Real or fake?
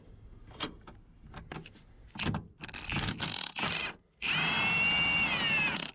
real